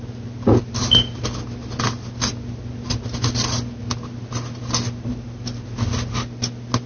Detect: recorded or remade recorded